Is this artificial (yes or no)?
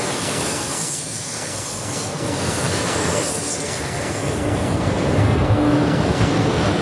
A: yes